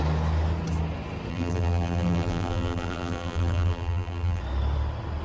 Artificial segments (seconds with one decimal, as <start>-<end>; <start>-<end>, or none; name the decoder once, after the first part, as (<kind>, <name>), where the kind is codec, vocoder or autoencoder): 1.3-4.4 (vocoder, BigVGAN v2)

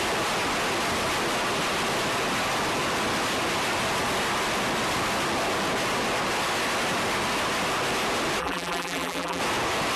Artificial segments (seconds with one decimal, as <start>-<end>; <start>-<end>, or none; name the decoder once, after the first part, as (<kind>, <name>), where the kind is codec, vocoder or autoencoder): 8.4-9.4 (vocoder, BigVGAN v2)

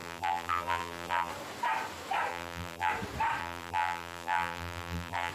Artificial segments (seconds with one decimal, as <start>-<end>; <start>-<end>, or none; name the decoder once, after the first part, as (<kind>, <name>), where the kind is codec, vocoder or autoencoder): 0.0-1.3 (vocoder, BigVGAN v2); 2.3-2.9; 3.4-5.3

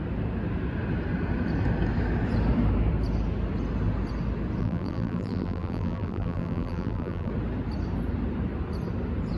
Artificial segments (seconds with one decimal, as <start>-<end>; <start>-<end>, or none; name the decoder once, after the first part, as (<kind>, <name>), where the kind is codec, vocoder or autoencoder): 4.6-7.3 (vocoder, BigVGAN v2)

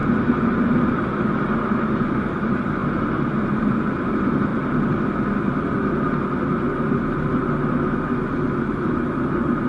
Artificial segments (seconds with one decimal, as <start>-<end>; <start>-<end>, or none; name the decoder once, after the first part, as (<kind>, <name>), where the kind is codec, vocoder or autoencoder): 0.8-2.8 (vocoder, BigVGAN v2); 3.6-4.5

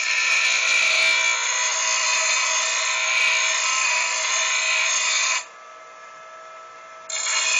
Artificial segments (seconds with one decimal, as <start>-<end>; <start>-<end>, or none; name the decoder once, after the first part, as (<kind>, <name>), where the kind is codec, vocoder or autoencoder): none

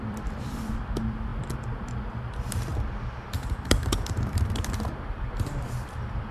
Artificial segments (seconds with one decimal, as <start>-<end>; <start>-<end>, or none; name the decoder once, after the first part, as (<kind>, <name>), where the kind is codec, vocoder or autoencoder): 0.0-6.3 (vocoder, BigVGAN v2)